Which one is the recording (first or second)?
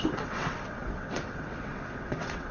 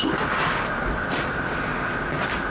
second